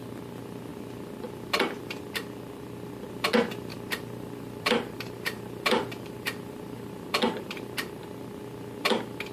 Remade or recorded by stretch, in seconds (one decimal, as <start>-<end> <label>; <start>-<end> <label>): 0.0-3.7 recorded; 3.7-8.0 remade; 8.0-9.3 recorded